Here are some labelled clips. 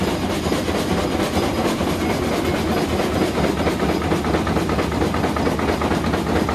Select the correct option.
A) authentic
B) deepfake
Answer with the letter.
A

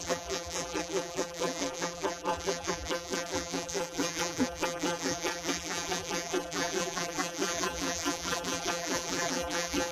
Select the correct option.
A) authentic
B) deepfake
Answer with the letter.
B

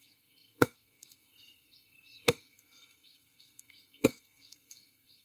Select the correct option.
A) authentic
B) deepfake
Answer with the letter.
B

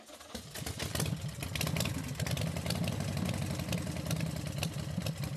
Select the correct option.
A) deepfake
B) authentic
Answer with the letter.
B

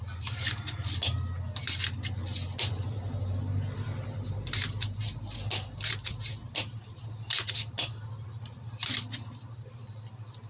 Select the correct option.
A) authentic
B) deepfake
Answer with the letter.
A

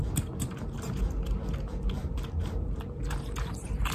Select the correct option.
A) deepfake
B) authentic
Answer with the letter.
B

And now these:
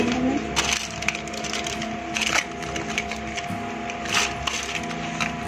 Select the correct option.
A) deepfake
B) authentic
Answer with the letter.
B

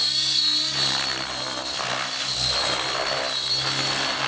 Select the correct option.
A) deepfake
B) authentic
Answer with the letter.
B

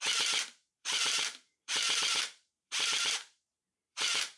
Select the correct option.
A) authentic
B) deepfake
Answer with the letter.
B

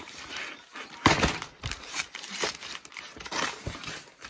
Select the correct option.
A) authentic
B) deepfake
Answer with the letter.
B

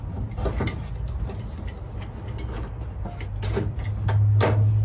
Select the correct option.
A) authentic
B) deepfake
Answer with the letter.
A